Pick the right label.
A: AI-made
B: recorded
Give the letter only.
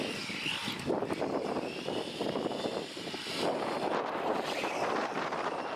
B